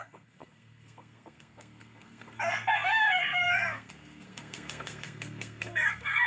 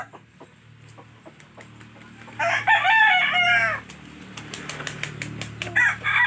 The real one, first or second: second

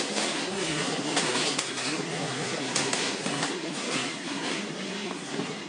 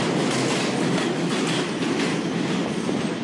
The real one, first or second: second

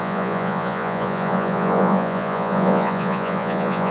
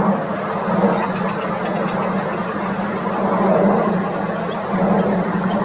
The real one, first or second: second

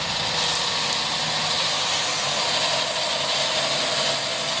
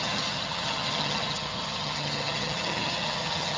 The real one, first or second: first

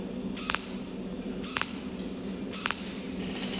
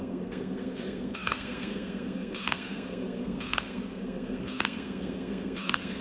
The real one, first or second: first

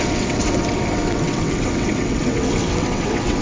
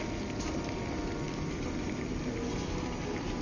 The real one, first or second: second